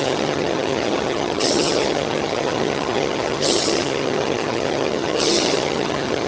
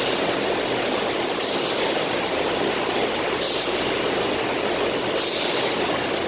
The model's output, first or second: first